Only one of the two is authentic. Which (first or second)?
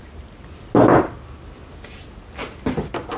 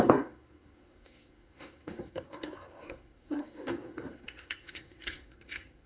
first